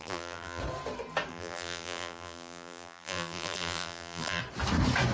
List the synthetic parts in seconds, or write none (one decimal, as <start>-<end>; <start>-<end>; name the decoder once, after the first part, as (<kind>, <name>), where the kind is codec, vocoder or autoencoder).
0.0-0.6 (vocoder, BigVGAN v2); 1.3-4.4